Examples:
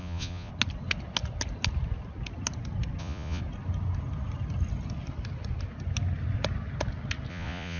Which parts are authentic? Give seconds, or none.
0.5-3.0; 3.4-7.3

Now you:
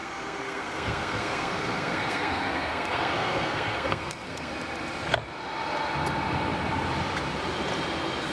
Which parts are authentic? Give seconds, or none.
4.5-8.3

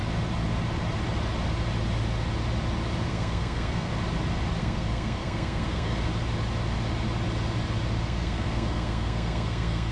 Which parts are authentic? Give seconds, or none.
0.0-3.1; 3.9-4.6; 6.1-8.0

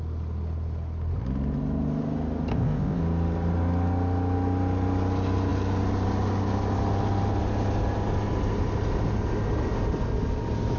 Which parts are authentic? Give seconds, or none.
0.0-2.5; 3.0-10.8

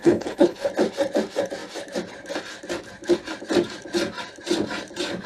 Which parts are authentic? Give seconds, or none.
0.7-5.3

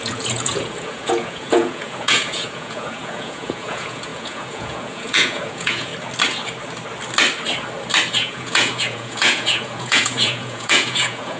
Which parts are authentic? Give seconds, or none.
5.9-8.1